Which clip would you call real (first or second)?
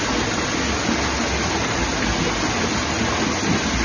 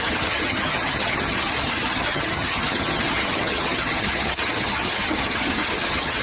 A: first